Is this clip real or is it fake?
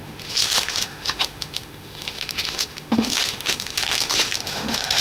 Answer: fake